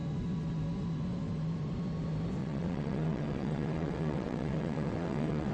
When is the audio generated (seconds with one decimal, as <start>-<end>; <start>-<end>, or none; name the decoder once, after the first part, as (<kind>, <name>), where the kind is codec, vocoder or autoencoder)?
2.4-5.5 (vocoder, WaveNeXt)